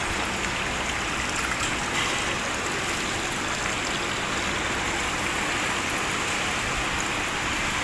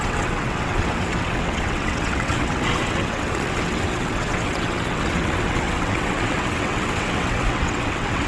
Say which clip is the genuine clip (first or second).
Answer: first